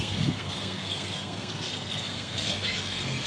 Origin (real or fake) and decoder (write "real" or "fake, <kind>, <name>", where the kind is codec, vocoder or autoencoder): fake, codec, SNAC